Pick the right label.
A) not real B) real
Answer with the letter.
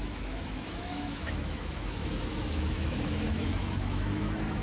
A